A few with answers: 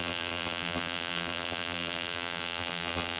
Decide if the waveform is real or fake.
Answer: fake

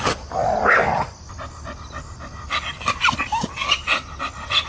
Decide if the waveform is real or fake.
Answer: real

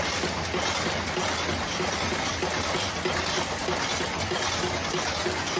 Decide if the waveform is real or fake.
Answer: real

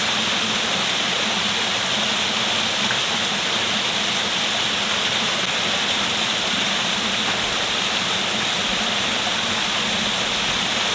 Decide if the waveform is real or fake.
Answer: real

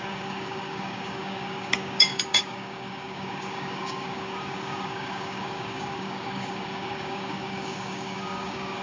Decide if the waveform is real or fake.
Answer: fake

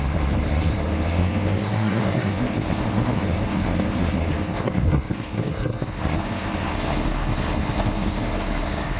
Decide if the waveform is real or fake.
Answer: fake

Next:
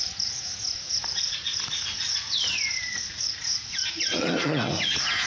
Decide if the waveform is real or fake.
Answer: fake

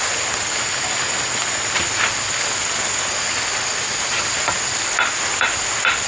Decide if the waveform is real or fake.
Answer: real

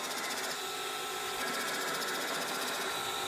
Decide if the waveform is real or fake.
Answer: real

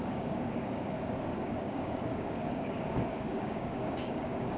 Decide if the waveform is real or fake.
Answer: fake